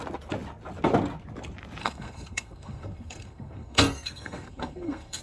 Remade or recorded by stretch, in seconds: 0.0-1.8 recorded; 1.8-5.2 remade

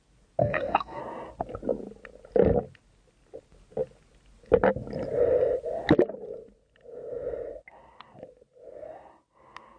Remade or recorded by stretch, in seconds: 0.0-0.4 recorded; 0.4-1.0 remade; 1.0-9.8 recorded

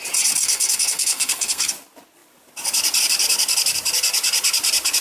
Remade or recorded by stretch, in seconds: 0.0-0.4 recorded; 0.4-1.7 remade; 1.7-5.0 recorded

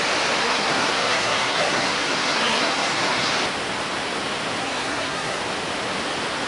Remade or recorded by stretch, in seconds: 0.0-0.4 recorded; 0.4-3.3 remade; 3.3-4.6 recorded; 4.6-5.4 remade; 5.4-6.5 recorded

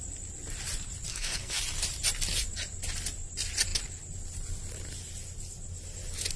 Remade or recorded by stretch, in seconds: 0.0-1.1 recorded; 1.1-1.6 remade; 1.6-6.4 recorded